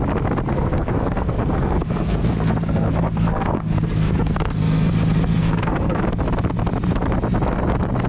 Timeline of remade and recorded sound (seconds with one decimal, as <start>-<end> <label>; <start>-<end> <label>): 0.0-0.5 recorded; 0.5-4.9 remade; 4.9-5.4 recorded; 5.4-6.0 remade; 6.0-8.1 recorded